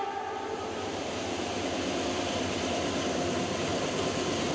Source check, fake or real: fake